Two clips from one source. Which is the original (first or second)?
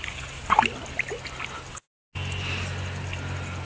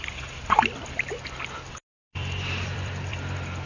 first